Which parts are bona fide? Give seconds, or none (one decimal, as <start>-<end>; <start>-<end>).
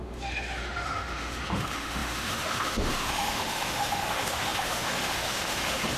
none